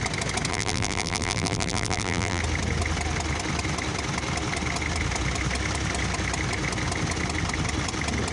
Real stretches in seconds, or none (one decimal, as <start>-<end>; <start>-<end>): 0.0-0.5; 2.4-8.3